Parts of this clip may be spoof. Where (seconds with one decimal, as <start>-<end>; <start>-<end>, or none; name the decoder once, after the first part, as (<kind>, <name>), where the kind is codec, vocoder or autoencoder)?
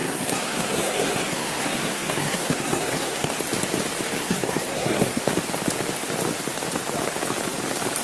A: 0.0-3.3 (codec, SNAC); 4.2-5.2